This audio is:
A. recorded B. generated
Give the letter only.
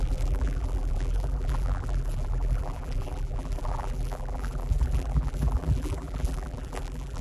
B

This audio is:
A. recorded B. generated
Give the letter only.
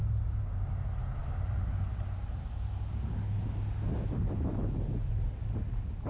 A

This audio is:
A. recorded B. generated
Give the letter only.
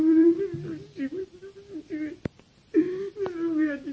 B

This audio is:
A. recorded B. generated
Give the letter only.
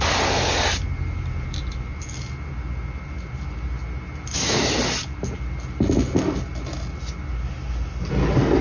A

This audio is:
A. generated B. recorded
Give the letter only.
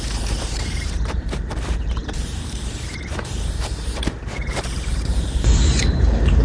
A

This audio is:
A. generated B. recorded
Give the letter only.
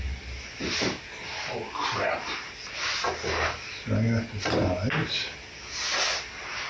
B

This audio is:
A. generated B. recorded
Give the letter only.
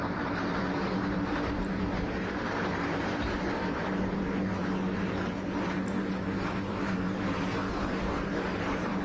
A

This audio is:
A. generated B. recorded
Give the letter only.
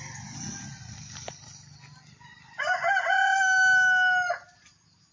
B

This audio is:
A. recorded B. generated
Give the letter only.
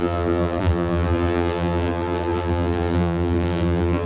B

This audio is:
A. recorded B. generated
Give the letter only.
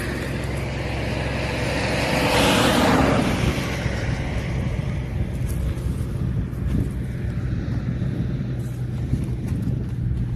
A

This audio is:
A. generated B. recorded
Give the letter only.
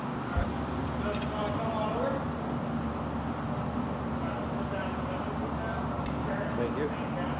B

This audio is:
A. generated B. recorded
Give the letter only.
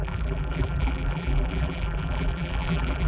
A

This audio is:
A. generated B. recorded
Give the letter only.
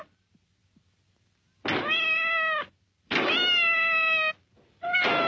B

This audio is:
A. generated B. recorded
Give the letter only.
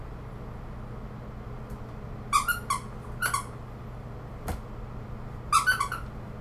B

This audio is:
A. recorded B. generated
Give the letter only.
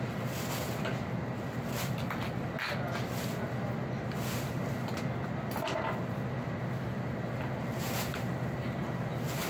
A